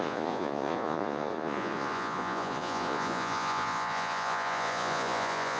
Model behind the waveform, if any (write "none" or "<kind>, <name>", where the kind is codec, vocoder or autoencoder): vocoder, Vocos